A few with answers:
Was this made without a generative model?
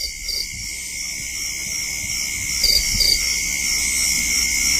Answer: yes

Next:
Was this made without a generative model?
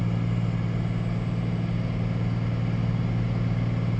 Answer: yes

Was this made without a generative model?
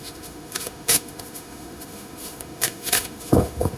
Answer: no